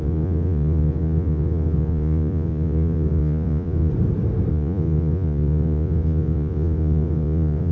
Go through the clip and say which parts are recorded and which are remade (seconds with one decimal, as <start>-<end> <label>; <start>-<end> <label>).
0.0-3.9 remade; 3.9-4.5 recorded; 4.5-7.7 remade